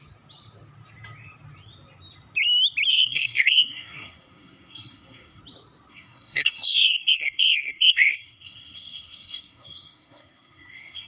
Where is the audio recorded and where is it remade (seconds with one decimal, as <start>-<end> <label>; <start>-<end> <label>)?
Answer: 0.0-2.9 recorded; 2.9-5.4 remade; 5.4-5.9 recorded; 5.9-11.1 remade